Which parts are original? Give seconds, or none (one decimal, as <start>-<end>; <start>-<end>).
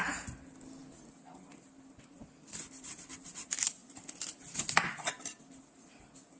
0.0-3.8; 4.6-6.4